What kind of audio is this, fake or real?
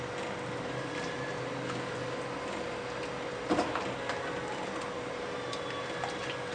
real